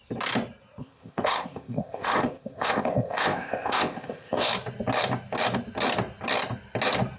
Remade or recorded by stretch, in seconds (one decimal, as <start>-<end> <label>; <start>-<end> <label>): 0.0-0.8 recorded; 0.8-4.5 remade; 4.5-7.2 recorded